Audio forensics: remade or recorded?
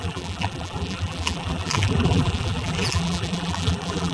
remade